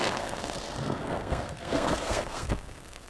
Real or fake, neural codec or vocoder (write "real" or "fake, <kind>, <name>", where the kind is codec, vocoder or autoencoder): fake, codec, SNAC